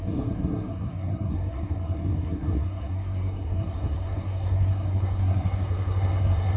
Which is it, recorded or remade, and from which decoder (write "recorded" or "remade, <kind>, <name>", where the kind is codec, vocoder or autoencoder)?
remade, codec, SNAC